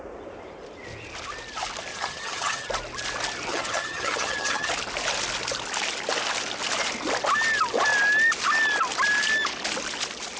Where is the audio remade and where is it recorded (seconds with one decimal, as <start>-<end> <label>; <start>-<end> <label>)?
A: 0.0-1.9 recorded; 1.9-2.7 remade; 2.7-3.5 recorded; 3.5-4.7 remade; 4.7-10.4 recorded